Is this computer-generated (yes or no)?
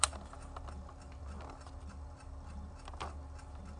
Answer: no